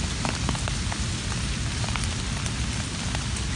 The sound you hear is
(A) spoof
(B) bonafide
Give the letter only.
B